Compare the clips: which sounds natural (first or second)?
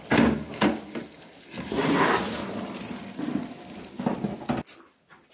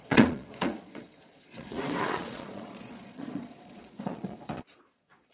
first